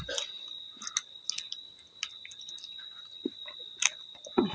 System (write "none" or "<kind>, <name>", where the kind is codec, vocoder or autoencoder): none